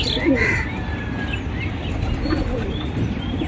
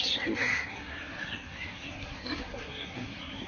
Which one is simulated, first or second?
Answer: second